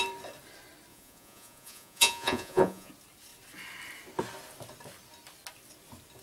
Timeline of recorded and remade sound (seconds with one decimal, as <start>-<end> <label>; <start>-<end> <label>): 0.0-0.9 recorded; 0.9-2.9 remade; 2.9-6.2 recorded